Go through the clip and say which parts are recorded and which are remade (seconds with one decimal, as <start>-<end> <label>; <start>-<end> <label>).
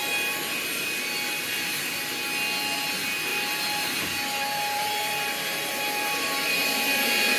0.0-2.2 remade; 2.2-3.3 recorded; 3.3-7.4 remade